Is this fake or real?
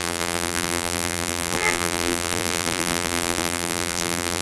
fake